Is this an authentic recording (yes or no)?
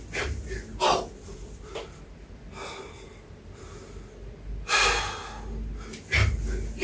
yes